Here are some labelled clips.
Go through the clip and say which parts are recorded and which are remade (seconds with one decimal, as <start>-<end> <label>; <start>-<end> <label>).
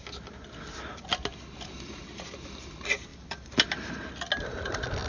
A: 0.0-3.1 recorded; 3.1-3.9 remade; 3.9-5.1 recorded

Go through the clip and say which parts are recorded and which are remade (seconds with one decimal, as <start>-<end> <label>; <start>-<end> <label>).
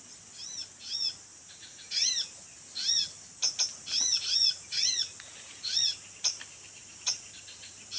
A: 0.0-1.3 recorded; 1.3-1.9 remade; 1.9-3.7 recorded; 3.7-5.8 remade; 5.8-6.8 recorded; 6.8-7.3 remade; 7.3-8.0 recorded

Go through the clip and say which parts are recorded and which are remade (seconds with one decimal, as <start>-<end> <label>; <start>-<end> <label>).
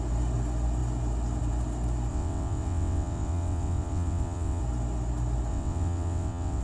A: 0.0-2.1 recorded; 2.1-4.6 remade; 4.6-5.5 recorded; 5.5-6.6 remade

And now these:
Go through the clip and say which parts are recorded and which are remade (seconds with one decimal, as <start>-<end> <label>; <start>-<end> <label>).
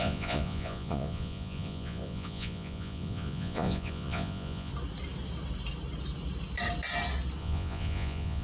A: 0.0-4.7 remade; 4.7-7.4 recorded; 7.4-8.4 remade